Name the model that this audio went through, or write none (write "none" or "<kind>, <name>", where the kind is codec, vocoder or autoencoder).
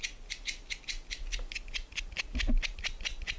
none